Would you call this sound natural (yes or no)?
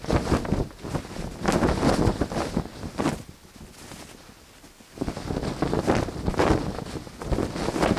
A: yes